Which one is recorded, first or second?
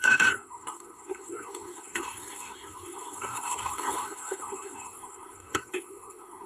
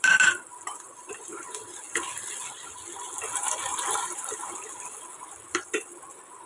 second